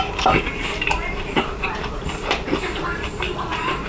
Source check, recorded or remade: remade